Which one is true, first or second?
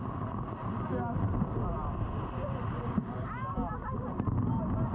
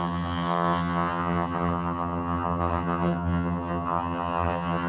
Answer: first